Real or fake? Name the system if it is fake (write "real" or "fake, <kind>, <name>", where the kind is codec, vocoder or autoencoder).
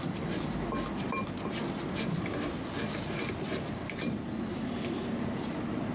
real